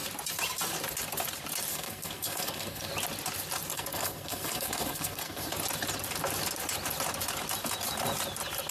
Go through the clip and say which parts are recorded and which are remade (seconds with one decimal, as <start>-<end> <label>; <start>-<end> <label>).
0.0-1.7 recorded; 1.7-2.9 remade; 2.9-3.7 recorded; 3.7-5.5 remade; 5.5-8.7 recorded